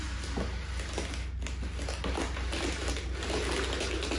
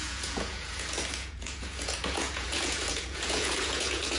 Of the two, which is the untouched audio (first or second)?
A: first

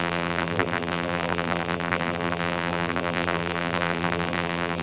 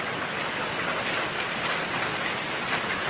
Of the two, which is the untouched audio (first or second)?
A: second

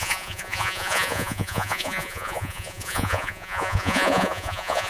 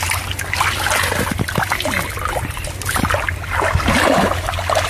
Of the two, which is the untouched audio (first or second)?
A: second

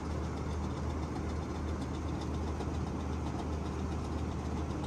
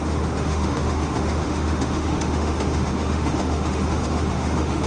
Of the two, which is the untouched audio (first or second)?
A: first